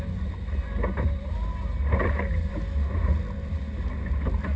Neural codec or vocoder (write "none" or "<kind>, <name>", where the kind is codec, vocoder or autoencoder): none